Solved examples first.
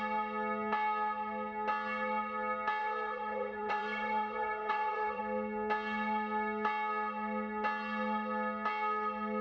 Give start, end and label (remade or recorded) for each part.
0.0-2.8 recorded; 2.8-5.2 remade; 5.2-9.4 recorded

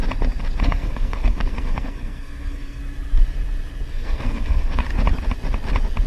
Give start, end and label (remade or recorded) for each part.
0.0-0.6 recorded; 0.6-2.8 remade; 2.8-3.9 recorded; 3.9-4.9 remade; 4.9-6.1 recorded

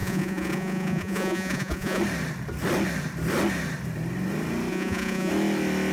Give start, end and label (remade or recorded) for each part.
0.0-2.0 remade; 2.0-4.7 recorded; 4.7-5.3 remade; 5.3-5.9 recorded